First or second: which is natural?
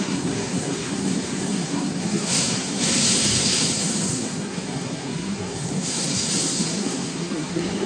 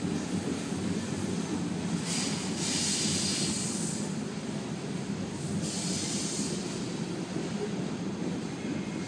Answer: second